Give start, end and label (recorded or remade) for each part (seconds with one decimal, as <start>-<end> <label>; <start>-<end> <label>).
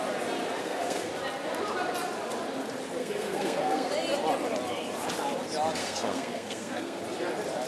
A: 0.0-0.6 recorded; 0.6-1.1 remade; 1.1-3.0 recorded; 3.0-3.9 remade; 3.9-5.8 recorded; 5.8-7.0 remade; 7.0-7.7 recorded